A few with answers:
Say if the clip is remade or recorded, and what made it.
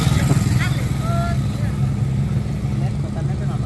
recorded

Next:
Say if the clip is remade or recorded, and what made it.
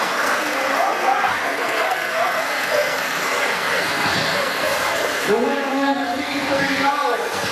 remade, codec, SNAC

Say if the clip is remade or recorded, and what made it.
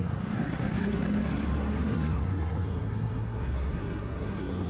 remade, codec, SNAC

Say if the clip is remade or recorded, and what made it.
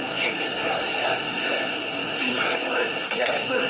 remade, codec, SNAC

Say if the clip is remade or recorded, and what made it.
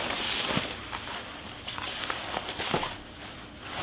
recorded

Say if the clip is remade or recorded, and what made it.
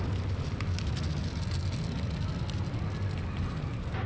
recorded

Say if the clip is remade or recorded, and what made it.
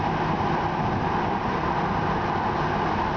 recorded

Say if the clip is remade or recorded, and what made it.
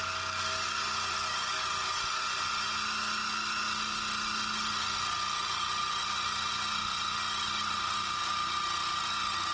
recorded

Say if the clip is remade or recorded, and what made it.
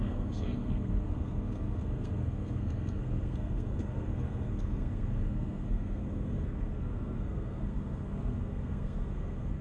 remade, codec, SNAC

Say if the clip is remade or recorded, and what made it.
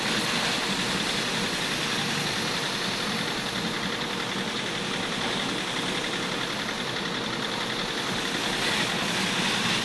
recorded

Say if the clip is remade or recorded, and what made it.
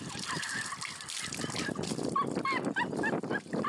recorded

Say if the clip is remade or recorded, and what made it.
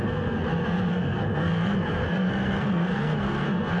remade, codec, SNAC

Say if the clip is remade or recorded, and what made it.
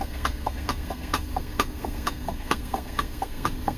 remade, codec, SNAC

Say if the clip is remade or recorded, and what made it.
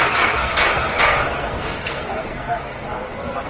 remade, codec, SNAC